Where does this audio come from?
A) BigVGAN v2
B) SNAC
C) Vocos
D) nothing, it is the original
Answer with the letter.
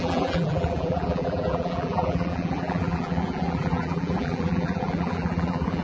A